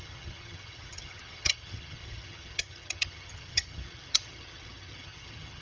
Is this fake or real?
fake